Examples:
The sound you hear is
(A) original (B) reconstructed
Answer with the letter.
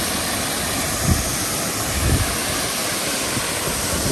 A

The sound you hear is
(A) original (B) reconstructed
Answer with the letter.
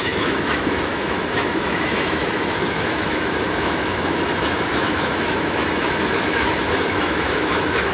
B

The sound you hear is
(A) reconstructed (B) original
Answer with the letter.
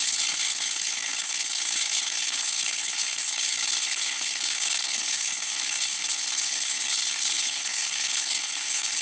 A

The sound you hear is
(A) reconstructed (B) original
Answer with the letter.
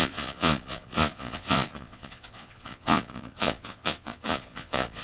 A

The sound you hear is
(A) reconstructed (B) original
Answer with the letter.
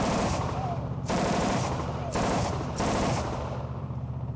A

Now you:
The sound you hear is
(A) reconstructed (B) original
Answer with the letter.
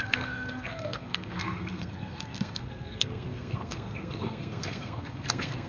A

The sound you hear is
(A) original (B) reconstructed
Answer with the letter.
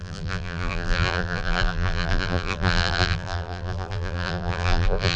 B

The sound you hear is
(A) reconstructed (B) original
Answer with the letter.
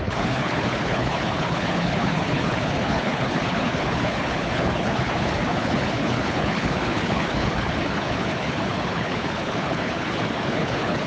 A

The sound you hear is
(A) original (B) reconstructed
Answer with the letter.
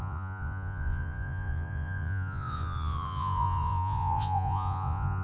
B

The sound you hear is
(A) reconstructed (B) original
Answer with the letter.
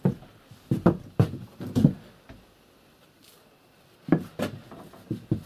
B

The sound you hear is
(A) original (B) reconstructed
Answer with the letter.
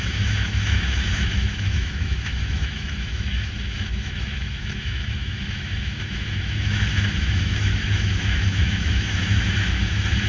B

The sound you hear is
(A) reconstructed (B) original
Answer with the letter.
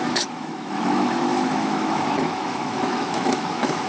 A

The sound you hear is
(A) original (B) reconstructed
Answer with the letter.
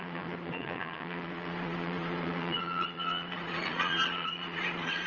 B